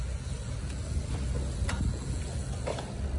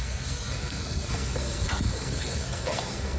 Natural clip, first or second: first